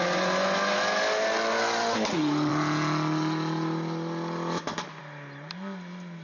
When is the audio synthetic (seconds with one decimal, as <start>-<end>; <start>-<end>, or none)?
none